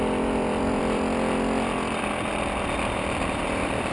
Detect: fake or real fake